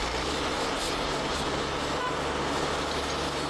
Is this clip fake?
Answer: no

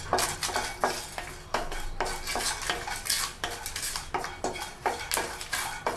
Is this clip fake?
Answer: no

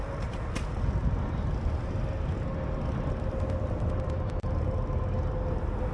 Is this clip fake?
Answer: no